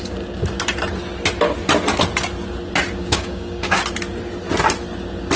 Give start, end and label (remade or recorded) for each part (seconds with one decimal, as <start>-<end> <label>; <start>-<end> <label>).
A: 0.0-3.0 recorded; 3.0-3.8 remade; 3.8-5.4 recorded